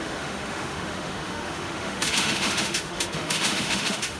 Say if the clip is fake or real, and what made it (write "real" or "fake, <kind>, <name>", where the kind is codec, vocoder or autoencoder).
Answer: fake, autoencoder, DAC-VAE